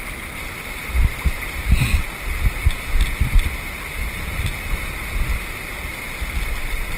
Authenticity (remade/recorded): recorded